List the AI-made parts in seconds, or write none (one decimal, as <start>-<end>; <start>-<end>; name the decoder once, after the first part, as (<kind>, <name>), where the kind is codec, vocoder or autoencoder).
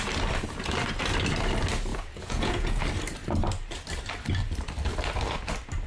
1.9-2.8 (vocoder, Vocos)